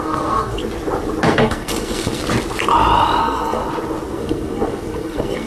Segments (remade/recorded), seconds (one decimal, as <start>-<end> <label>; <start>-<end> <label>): 0.0-0.6 remade; 0.6-1.2 recorded; 1.2-2.2 remade; 2.2-3.2 recorded; 3.2-3.6 remade; 3.6-4.1 recorded; 4.1-5.5 remade

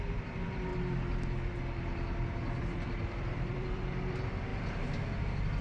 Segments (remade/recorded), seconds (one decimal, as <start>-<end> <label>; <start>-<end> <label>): 0.0-0.7 remade; 0.7-2.6 recorded; 2.6-4.5 remade; 4.5-5.1 recorded; 5.1-5.6 remade

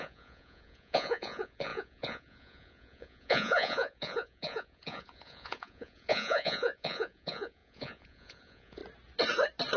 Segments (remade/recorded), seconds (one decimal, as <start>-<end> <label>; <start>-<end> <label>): 0.0-8.8 remade; 8.8-9.8 recorded

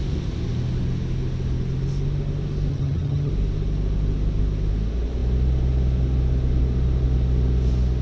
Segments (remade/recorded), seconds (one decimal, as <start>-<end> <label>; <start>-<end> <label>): 0.0-2.7 recorded; 2.7-3.3 remade; 3.3-8.0 recorded

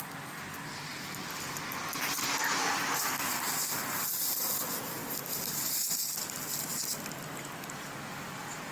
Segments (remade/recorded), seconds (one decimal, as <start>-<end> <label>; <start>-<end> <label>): 0.0-8.7 recorded